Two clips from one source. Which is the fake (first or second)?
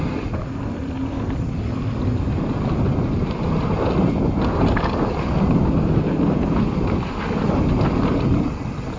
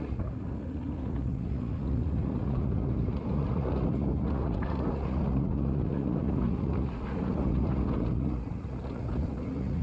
second